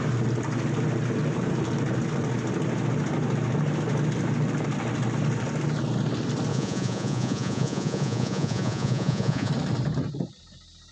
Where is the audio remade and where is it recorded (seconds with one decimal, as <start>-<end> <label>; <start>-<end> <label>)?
0.0-6.5 recorded; 6.5-9.5 remade; 9.5-10.9 recorded